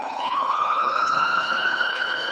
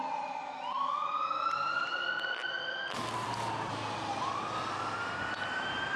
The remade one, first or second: first